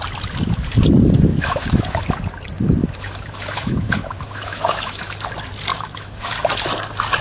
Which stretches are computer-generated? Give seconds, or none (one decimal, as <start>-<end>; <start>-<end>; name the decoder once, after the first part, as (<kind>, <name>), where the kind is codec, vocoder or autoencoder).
1.3-2.0 (autoencoder, DAC-VAE); 2.8-5.1; 5.7-6.3

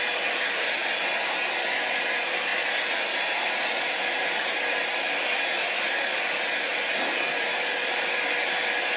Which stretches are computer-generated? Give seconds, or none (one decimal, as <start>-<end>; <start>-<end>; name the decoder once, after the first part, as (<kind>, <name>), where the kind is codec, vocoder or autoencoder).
0.0-0.8 (vocoder, BigVGAN v2); 1.5-9.0

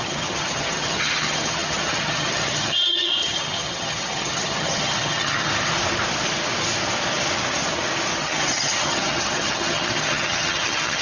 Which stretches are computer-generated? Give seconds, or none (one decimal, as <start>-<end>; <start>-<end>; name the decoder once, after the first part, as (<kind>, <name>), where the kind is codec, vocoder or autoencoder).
0.0-5.5 (vocoder, HiFi-GAN); 8.2-11.0